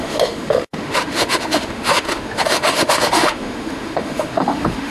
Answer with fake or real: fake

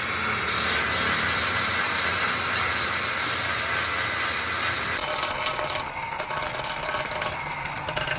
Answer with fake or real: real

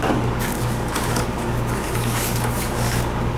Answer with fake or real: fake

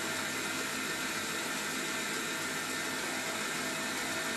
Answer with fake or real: real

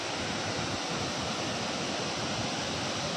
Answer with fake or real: real